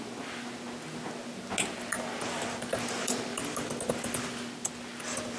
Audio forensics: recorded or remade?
recorded